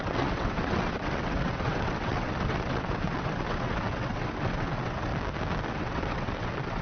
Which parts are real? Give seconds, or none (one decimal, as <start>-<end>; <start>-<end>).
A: 5.1-5.7